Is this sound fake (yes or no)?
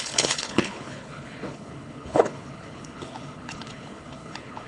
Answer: yes